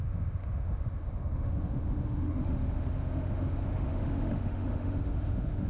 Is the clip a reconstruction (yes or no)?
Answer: yes